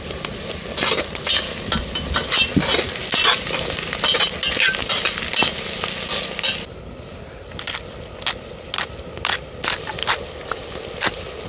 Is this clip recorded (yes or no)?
yes